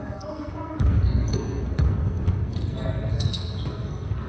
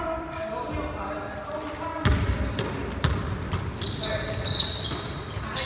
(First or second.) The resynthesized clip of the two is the first